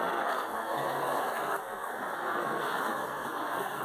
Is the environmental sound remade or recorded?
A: remade